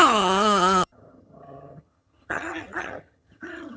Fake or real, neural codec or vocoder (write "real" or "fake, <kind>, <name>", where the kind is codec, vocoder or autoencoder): fake, vocoder, HiFi-GAN